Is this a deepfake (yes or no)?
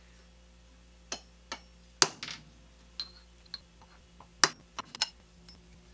no